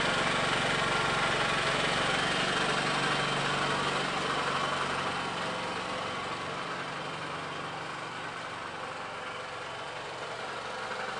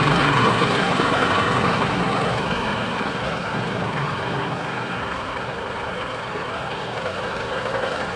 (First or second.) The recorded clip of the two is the first